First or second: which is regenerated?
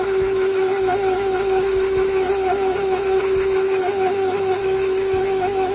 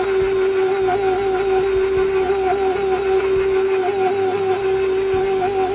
first